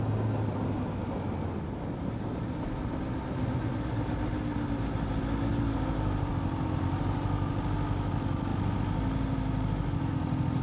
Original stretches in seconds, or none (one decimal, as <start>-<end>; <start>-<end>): 0.0-5.5; 6.3-10.6